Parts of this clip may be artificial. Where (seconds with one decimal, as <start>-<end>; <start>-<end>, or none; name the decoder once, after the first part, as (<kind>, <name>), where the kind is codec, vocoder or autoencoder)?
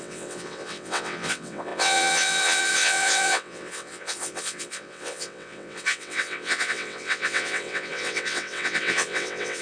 0.0-9.6 (vocoder, WaveNeXt)